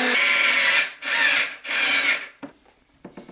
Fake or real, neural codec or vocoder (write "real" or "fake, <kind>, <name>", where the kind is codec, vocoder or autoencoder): fake, vocoder, BigVGAN v2